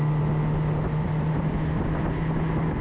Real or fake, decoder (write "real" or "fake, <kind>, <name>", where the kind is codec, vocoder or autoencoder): real